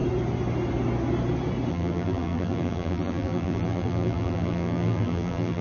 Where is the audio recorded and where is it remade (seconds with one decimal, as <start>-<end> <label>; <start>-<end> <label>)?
0.0-1.7 recorded; 1.7-5.6 remade

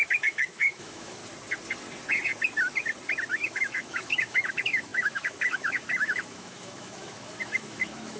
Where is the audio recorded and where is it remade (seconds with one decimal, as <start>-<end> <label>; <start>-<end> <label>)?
0.0-1.2 remade; 1.2-3.3 recorded; 3.3-8.2 remade

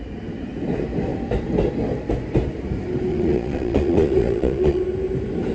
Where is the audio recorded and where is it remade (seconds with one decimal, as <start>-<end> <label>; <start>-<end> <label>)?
0.0-3.1 recorded; 3.1-4.8 remade; 4.8-5.5 recorded

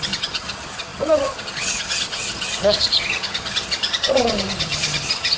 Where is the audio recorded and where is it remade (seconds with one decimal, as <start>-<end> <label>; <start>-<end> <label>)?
0.0-5.4 remade

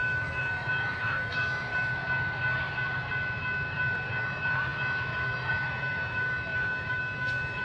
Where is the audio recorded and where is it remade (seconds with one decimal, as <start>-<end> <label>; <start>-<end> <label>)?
0.0-1.7 remade; 1.7-4.2 recorded; 4.2-7.6 remade

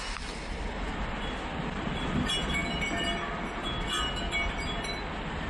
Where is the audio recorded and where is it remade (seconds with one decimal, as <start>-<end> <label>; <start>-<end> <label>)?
0.0-5.5 recorded